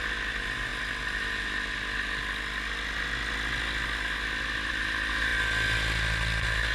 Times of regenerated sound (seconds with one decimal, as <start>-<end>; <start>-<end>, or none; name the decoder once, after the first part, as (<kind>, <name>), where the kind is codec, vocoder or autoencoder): none